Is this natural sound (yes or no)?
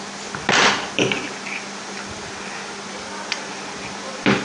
yes